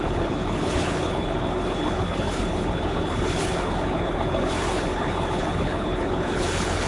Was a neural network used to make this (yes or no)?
yes